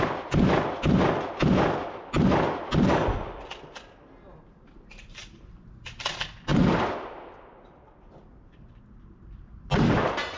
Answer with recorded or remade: recorded